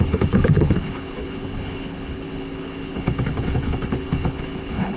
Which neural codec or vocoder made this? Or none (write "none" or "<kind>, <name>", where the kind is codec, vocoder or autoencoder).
codec, HILCodec